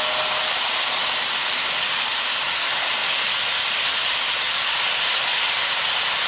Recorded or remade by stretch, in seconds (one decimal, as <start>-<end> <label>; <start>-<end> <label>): 0.0-6.3 recorded